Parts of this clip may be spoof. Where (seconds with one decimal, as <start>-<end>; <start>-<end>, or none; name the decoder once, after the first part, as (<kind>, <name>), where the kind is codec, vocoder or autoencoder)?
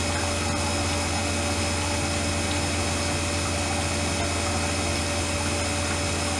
none